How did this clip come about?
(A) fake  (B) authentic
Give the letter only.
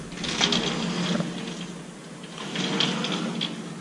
B